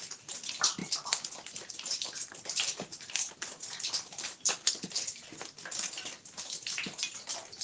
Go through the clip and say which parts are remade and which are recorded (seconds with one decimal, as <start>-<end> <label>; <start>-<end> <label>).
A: 0.0-7.6 recorded